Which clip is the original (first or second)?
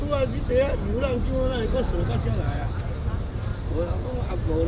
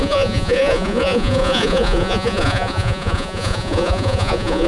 first